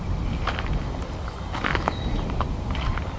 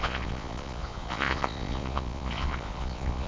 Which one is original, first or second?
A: first